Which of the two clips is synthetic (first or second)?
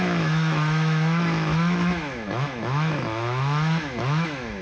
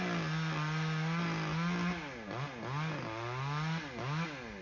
first